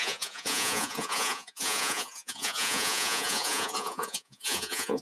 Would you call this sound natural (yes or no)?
no